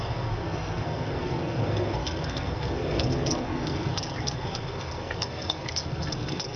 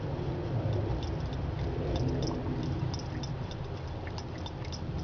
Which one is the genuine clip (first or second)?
second